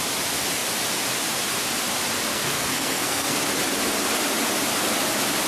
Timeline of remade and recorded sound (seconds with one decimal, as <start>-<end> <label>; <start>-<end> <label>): 0.0-2.3 recorded; 2.3-3.4 remade; 3.4-5.5 recorded